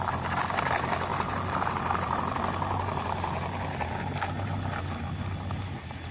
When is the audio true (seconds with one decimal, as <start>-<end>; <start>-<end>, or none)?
0.0-6.1